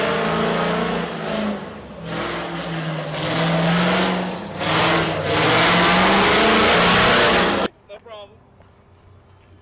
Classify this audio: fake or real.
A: real